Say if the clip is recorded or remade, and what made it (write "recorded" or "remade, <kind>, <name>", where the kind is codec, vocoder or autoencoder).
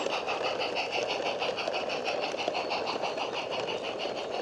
recorded